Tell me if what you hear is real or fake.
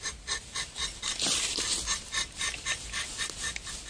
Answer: real